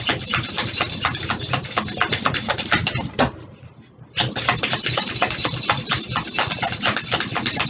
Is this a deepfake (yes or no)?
yes